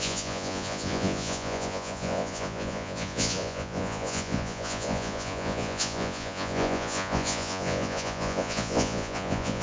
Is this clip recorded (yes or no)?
no